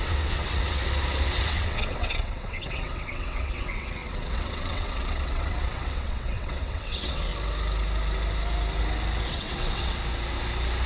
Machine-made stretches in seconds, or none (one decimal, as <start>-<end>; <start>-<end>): 0.0-0.8; 1.4-7.3; 9.3-10.0